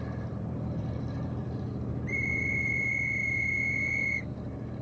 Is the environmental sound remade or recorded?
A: remade